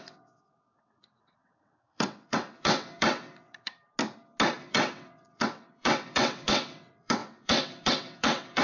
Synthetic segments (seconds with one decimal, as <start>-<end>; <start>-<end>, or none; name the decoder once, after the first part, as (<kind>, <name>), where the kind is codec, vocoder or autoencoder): 0.0-3.8 (vocoder, WaveNeXt); 4.5-8.6